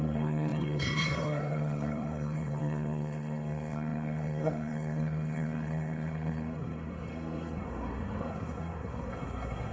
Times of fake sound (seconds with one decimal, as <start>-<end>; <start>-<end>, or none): 0.0-9.7